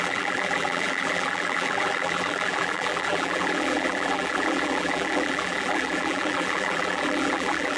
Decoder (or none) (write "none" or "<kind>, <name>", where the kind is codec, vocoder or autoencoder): vocoder, BigVGAN v2